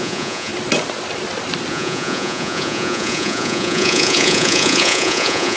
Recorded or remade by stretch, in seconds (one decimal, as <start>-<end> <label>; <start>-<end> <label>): 0.0-0.5 remade; 0.5-1.7 recorded; 1.7-5.6 remade

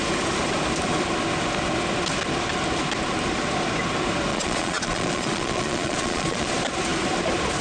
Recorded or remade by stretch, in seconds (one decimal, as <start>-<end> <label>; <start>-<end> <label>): 0.0-4.3 recorded; 4.3-6.5 remade; 6.5-7.6 recorded

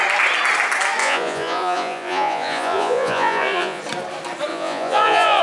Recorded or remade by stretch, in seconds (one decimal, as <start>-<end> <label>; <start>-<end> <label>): 0.0-1.0 recorded; 1.0-3.8 remade; 3.8-4.5 recorded; 4.5-5.4 remade

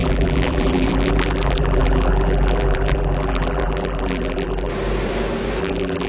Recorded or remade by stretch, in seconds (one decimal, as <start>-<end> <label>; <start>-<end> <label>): 0.0-4.7 remade; 4.7-5.6 recorded; 5.6-6.1 remade

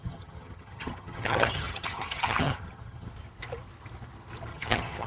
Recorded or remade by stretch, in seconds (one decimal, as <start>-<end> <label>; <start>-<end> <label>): 0.0-3.1 remade; 3.1-4.5 recorded; 4.5-5.1 remade

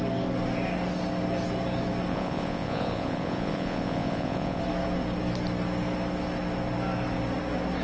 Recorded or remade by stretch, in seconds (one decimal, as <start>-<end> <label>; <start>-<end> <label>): 0.0-2.1 recorded; 2.1-4.6 remade; 4.6-7.8 recorded

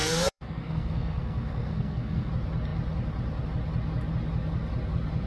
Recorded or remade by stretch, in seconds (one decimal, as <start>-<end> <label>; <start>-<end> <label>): 0.0-2.3 remade; 2.3-5.3 recorded